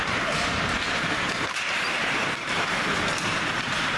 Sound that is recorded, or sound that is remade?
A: remade